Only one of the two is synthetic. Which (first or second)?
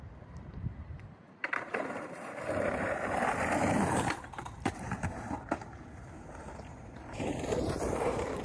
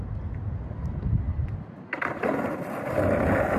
first